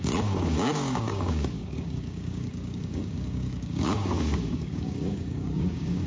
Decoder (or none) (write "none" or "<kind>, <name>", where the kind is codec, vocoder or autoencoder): codec, DAC